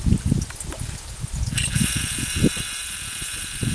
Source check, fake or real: real